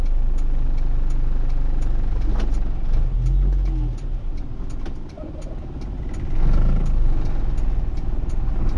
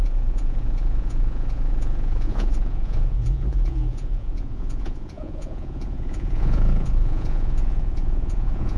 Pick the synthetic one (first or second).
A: second